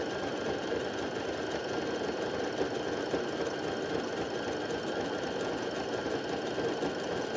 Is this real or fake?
real